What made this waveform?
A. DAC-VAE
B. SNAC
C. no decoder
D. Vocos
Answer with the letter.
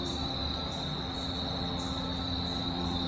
C